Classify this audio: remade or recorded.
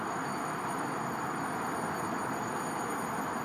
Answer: recorded